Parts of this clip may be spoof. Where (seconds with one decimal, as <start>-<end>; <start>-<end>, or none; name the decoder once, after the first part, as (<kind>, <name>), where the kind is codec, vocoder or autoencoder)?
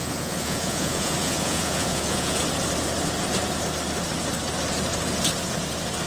0.0-2.4 (vocoder, Vocos)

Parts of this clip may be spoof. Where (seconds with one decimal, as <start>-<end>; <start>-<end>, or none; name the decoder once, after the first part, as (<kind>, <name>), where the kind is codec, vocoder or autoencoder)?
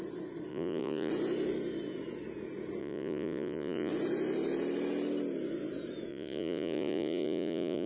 0.5-1.1 (vocoder, Vocos); 2.8-3.9; 6.1-7.9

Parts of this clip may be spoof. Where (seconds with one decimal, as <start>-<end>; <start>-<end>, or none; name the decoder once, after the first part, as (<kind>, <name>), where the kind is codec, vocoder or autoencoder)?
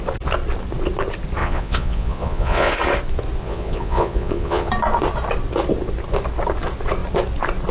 1.4-2.7 (vocoder, Vocos); 3.4-4.7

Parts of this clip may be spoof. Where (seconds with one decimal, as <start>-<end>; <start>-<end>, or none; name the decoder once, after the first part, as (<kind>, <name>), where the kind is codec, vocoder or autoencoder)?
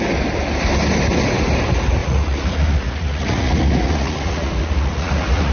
2.0-5.5 (vocoder, Vocos)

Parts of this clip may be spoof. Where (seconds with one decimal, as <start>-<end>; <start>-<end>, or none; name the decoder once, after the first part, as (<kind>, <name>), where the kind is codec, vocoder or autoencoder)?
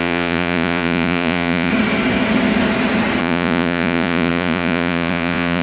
0.0-1.7 (vocoder, Vocos); 3.2-5.6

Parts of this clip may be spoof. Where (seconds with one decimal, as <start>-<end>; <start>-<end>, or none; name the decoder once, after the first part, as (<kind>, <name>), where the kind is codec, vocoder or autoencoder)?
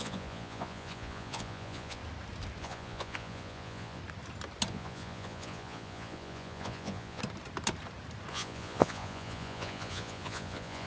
0.0-2.0 (vocoder, Vocos); 2.6-4.0; 4.7-7.2; 8.3-10.9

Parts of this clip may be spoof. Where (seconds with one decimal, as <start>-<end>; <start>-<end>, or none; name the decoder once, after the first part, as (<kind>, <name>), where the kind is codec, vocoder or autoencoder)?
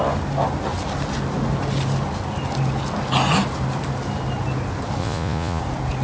5.0-5.6 (vocoder, Vocos)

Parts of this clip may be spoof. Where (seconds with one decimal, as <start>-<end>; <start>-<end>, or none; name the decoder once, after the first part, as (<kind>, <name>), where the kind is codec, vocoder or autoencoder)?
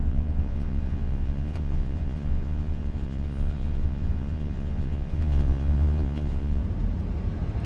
0.0-6.6 (vocoder, Vocos)